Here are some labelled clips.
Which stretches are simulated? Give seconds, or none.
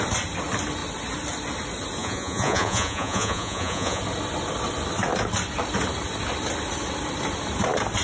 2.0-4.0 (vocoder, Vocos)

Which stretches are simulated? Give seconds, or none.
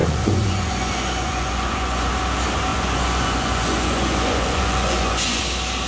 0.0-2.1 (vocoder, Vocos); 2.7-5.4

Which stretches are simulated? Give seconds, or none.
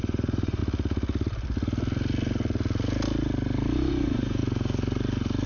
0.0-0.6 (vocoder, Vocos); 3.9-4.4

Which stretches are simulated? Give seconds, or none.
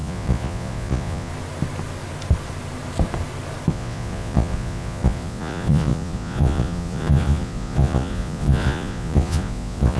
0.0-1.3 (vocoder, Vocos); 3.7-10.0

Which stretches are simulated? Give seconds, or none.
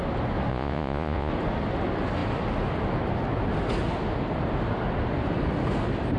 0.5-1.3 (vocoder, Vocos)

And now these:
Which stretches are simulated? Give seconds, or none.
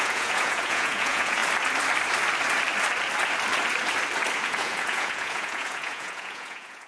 0.0-1.4 (vocoder, Vocos); 4.4-6.9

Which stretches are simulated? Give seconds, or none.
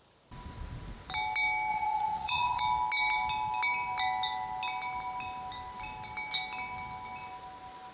1.7-2.6 (vocoder, Vocos)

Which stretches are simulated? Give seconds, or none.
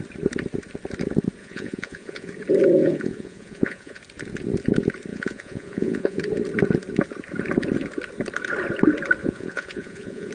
1.4-2.3 (vocoder, Vocos); 2.8-4.0; 5.1-6.2; 9.2-10.3